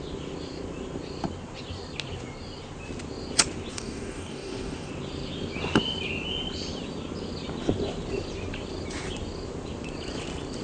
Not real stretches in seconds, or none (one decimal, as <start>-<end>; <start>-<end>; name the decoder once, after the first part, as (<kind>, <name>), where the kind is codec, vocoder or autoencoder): 3.7-4.9 (codec, DAC)